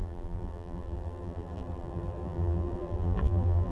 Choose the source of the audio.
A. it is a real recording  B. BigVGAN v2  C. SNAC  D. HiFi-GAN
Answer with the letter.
B